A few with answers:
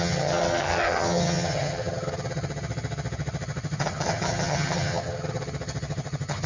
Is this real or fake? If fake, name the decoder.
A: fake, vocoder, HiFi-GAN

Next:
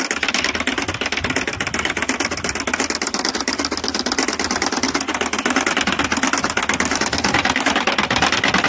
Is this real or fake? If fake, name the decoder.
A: real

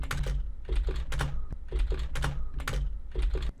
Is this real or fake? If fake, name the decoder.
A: real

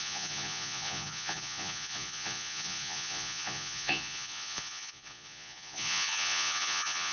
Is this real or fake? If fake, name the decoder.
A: fake, vocoder, Vocos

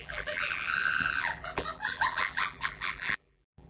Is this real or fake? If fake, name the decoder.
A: fake, vocoder, BigVGAN v2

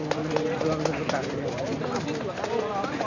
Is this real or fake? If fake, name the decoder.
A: real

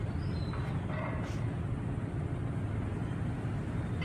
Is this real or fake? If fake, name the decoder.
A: real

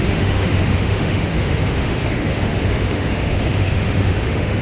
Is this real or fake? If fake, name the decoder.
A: fake, autoencoder, DAC-VAE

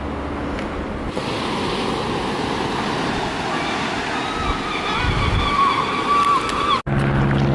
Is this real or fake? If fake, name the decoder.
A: real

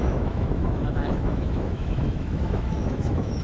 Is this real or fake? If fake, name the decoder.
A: fake, autoencoder, DAC-VAE